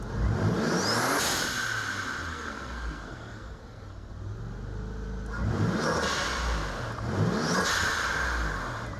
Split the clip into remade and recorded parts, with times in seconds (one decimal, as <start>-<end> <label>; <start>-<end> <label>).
0.0-2.3 recorded; 2.3-4.1 remade; 4.1-9.0 recorded

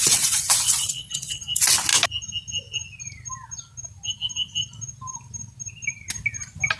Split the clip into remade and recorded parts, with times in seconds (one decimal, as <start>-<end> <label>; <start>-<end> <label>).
0.0-1.4 remade; 1.4-6.8 recorded